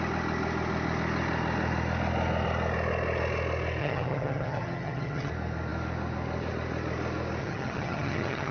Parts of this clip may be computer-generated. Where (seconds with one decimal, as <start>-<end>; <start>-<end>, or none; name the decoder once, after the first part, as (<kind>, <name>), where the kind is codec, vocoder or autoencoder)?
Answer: 3.8-5.3 (vocoder, HiFi-GAN); 7.4-8.5